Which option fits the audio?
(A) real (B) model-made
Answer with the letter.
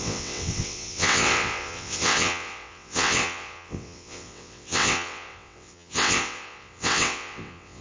B